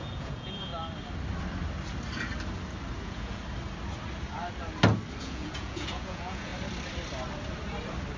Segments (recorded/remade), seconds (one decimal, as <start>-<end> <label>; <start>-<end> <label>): 0.0-0.7 remade; 0.7-3.0 recorded; 3.0-3.4 remade; 3.4-5.2 recorded; 5.2-6.5 remade; 6.5-8.2 recorded